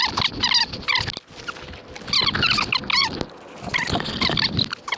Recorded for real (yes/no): yes